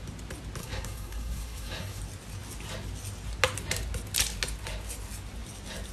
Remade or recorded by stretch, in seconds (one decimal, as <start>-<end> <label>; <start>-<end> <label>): 0.0-0.6 recorded; 0.6-2.0 remade; 2.0-5.9 recorded